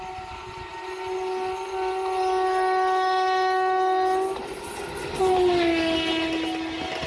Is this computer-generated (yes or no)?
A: no